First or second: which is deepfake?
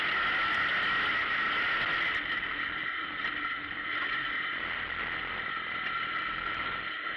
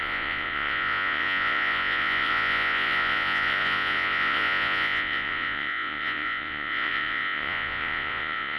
second